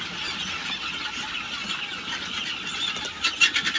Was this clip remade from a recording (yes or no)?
no